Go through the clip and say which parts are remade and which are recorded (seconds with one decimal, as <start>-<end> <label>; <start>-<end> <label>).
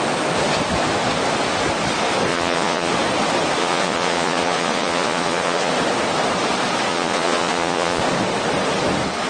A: 0.0-2.3 recorded; 2.3-2.9 remade; 2.9-3.6 recorded; 3.6-5.7 remade; 5.7-6.9 recorded; 6.9-8.0 remade; 8.0-9.3 recorded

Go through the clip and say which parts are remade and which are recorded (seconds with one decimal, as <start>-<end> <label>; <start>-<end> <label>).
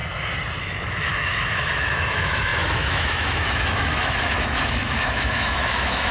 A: 0.0-0.6 recorded; 0.6-6.1 remade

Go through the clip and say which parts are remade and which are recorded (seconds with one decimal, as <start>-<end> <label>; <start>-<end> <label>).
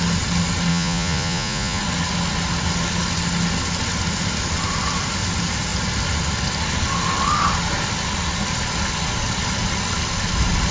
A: 0.0-0.7 recorded; 0.7-1.8 remade; 1.8-10.7 recorded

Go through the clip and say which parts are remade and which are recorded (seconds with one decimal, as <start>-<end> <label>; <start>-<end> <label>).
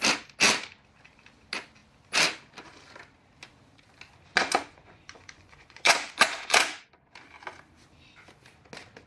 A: 0.0-4.3 recorded; 4.3-6.7 remade; 6.7-9.1 recorded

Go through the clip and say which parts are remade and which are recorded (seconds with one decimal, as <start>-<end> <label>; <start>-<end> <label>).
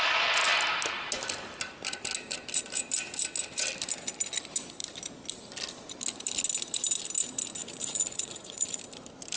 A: 0.0-7.6 recorded; 7.6-8.8 remade; 8.8-9.4 recorded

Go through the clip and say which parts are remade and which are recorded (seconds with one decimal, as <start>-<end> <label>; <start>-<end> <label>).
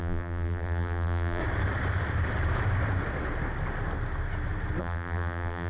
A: 0.0-1.4 remade; 1.4-4.8 recorded; 4.8-5.7 remade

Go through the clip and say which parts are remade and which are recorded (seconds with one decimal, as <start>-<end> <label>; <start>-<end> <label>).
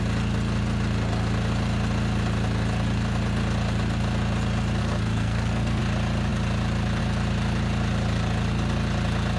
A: 0.0-4.8 recorded; 4.8-5.8 remade; 5.8-9.4 recorded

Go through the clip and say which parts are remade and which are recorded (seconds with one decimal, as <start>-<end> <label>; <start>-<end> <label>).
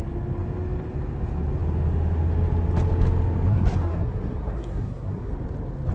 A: 0.0-3.5 recorded; 3.5-5.3 remade; 5.3-5.9 recorded